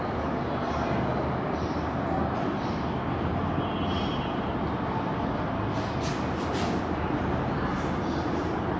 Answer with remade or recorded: recorded